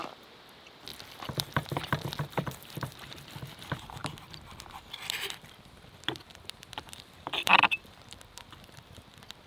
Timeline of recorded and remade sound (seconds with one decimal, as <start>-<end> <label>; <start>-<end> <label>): 0.0-0.9 remade; 0.9-2.2 recorded; 2.2-9.5 remade